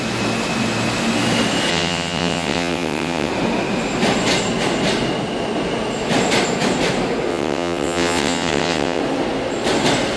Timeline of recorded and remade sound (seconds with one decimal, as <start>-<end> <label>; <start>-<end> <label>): 0.0-1.7 recorded; 1.7-3.3 remade; 3.3-7.3 recorded; 7.3-9.0 remade; 9.0-10.2 recorded